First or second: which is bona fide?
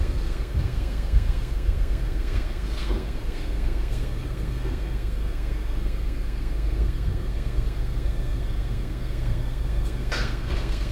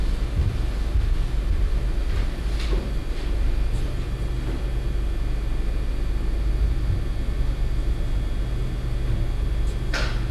second